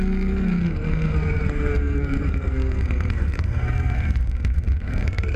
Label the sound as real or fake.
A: fake